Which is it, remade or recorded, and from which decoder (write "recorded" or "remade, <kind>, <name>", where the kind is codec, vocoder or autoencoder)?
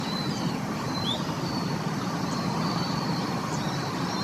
remade, vocoder, BigVGAN v2